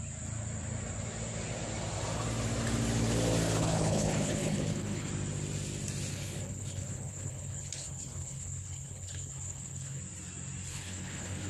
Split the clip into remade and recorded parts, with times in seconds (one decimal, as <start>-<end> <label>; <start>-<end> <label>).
0.0-3.6 recorded; 3.6-5.1 remade; 5.1-6.1 recorded; 6.1-10.0 remade; 10.0-10.7 recorded; 10.7-11.5 remade